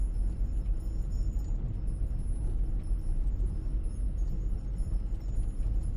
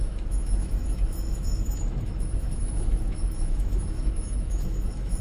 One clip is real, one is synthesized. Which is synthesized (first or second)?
second